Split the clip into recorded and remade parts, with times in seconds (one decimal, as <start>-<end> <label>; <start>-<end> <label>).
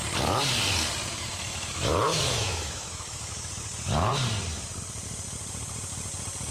0.0-1.1 recorded; 1.1-3.5 remade; 3.5-6.5 recorded